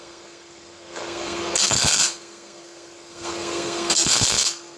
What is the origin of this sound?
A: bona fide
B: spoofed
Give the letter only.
B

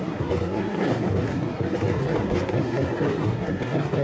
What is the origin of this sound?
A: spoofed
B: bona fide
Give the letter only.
A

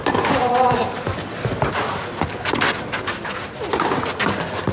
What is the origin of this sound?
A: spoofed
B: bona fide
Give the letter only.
B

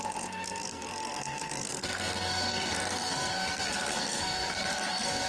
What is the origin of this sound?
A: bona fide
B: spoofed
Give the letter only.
B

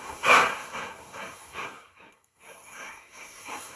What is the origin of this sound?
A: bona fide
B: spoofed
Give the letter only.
B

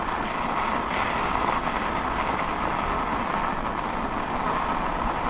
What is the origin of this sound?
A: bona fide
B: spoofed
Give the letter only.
A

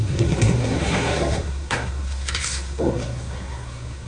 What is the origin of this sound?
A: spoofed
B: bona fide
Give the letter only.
A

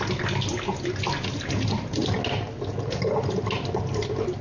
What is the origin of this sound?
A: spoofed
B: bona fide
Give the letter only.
B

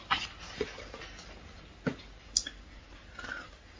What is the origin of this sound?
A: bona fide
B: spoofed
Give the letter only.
A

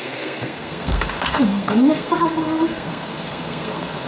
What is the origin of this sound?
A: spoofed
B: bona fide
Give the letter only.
A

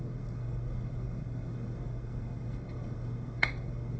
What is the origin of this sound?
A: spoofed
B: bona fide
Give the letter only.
A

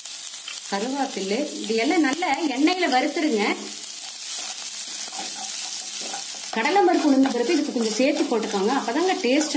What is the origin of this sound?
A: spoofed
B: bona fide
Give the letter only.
B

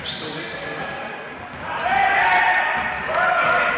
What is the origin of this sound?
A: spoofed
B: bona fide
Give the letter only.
B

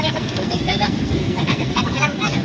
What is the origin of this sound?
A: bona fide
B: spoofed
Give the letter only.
B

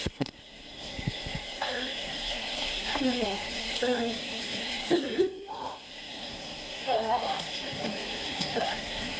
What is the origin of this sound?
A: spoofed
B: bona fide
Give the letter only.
A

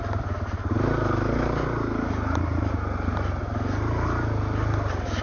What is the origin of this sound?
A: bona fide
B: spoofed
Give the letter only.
A